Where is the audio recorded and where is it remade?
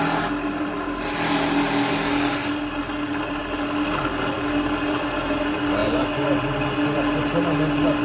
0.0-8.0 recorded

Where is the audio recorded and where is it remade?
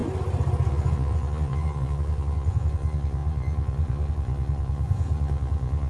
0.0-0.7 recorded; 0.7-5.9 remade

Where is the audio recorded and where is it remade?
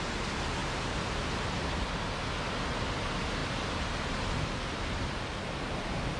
0.0-0.6 recorded; 0.6-1.2 remade; 1.2-3.4 recorded; 3.4-6.2 remade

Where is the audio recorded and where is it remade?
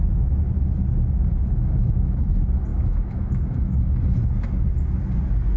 0.0-1.4 recorded; 1.4-2.3 remade; 2.3-2.7 recorded; 2.7-3.8 remade; 3.8-5.6 recorded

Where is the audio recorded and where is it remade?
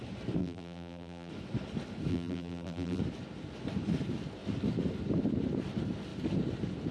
0.0-0.4 recorded; 0.4-1.3 remade; 1.3-2.1 recorded; 2.1-3.0 remade; 3.0-6.9 recorded